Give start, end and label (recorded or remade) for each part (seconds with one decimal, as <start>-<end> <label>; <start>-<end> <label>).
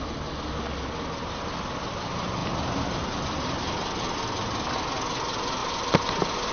0.0-2.4 recorded; 2.4-3.2 remade; 3.2-6.5 recorded